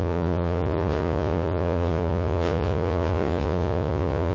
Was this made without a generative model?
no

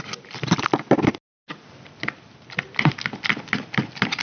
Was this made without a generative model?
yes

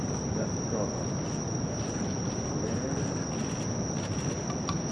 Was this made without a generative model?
yes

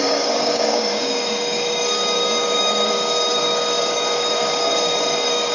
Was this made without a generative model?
no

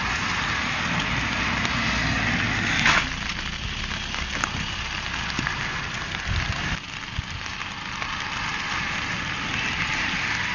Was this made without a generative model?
yes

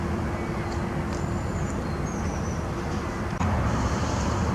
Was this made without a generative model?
yes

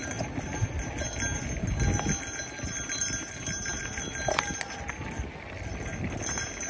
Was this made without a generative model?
yes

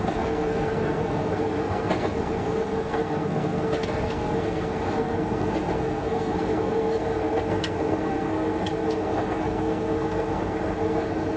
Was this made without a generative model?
no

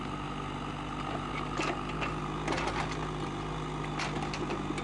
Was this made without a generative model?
yes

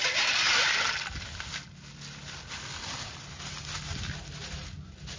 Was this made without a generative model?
yes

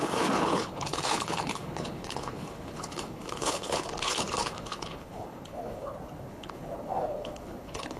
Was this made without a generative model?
no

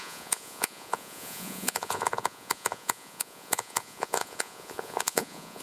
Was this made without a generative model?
no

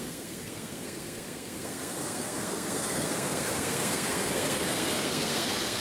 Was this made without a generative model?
no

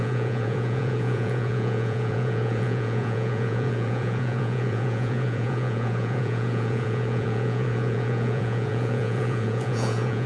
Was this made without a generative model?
no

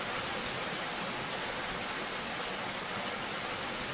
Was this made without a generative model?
yes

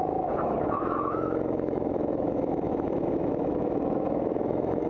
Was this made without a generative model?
no